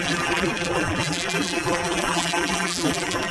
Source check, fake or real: fake